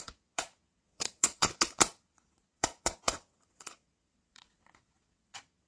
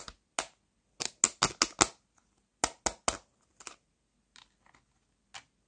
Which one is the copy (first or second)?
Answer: first